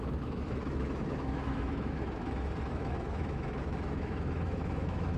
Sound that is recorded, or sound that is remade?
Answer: remade